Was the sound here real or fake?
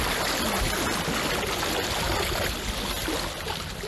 real